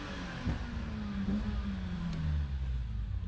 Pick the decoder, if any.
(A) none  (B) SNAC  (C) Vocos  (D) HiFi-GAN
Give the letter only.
A